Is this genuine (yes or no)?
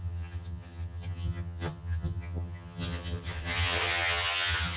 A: no